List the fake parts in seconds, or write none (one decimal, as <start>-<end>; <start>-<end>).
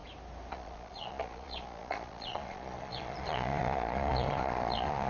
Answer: 0.5-5.1